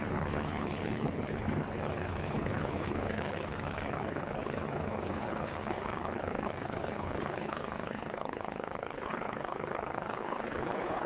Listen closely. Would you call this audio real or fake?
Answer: fake